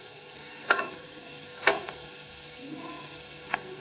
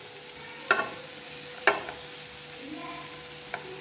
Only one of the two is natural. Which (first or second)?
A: second